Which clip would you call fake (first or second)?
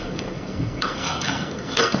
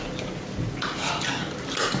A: first